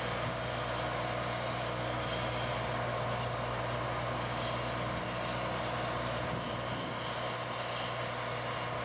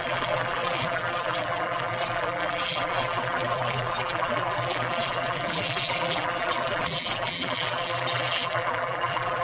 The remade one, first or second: second